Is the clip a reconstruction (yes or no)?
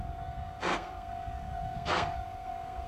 yes